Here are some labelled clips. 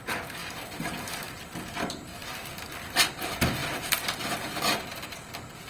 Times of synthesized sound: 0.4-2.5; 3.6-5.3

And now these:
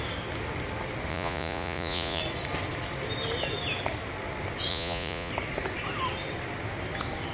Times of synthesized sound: 1.1-2.2; 4.7-5.3

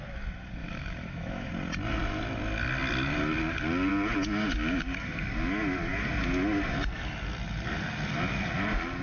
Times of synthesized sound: 0.6-1.5

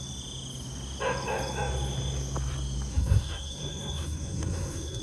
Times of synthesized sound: 2.9-5.0

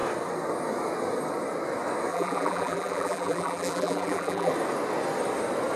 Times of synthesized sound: 2.1-4.5

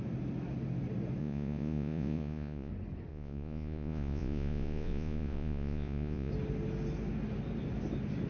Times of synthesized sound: 1.2-2.7; 3.1-6.3

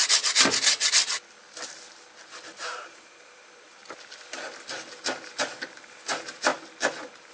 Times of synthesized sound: 2.6-3.8; 5.3-6.5